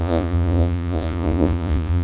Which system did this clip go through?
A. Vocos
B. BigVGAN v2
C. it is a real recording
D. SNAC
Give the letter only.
A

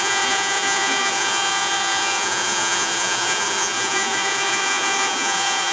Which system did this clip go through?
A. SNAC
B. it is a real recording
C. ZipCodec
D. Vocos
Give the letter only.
D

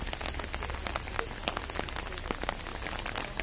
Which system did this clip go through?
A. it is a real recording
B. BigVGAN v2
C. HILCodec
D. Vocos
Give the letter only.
A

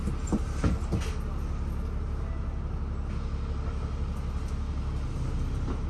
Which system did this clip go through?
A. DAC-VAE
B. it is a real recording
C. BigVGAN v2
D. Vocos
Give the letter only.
B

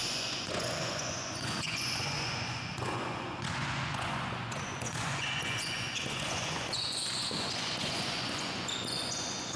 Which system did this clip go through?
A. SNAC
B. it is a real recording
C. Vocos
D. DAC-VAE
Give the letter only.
C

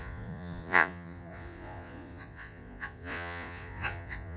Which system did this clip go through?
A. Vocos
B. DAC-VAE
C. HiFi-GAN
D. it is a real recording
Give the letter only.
A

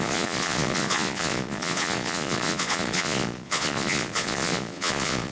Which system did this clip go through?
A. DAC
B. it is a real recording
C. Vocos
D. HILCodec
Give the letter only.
C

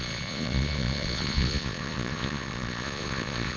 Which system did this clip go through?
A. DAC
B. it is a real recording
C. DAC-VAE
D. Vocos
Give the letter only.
D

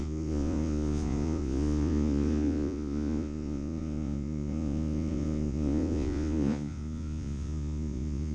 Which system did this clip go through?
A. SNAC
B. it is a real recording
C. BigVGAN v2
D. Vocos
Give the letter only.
D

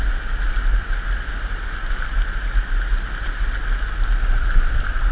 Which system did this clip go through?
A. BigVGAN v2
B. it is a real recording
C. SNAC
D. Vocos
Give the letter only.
B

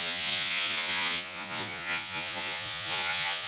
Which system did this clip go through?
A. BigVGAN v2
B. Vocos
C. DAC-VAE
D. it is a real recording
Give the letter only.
B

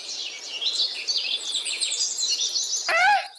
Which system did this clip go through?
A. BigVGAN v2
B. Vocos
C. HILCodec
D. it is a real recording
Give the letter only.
D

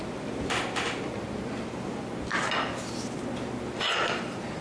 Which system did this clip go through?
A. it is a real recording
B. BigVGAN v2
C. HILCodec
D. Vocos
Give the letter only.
A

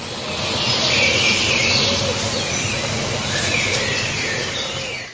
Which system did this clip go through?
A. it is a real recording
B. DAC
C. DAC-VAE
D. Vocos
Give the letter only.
A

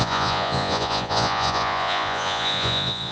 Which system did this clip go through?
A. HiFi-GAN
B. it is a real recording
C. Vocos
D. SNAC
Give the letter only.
C